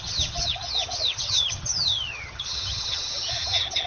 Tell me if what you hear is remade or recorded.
remade